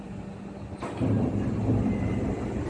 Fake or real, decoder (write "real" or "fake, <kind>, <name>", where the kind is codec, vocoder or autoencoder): real